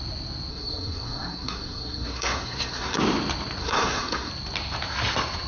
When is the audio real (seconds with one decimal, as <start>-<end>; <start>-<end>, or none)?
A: 0.0-0.5; 3.0-3.6; 4.3-5.5